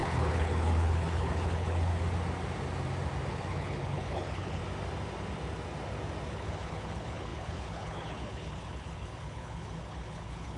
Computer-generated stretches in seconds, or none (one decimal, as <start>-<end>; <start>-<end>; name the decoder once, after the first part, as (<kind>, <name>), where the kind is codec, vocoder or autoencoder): 0.0-1.9 (codec, HILCodec); 3.3-4.6; 6.3-10.6